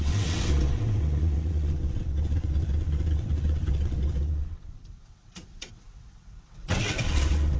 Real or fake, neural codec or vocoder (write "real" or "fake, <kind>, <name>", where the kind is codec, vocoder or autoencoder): fake, vocoder, WaveNeXt